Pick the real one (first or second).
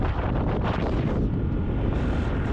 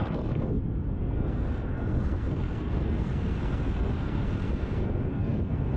first